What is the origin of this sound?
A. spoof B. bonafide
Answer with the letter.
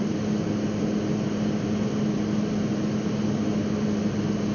B